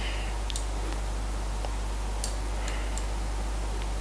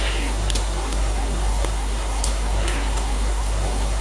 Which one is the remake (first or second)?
second